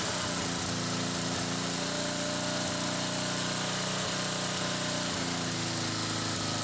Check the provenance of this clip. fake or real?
real